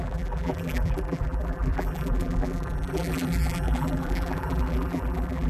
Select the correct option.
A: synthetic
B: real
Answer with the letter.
A